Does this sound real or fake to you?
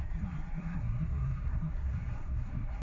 fake